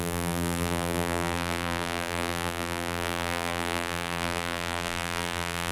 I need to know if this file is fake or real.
fake